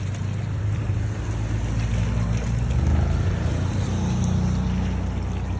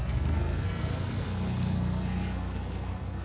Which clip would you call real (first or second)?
first